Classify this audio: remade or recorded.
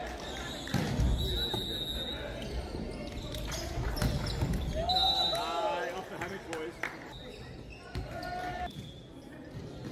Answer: recorded